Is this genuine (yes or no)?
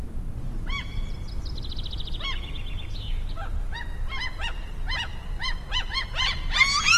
yes